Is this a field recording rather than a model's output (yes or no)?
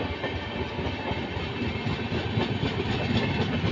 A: yes